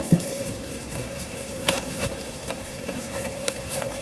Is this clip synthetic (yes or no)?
yes